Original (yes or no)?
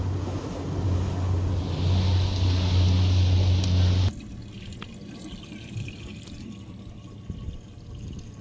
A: yes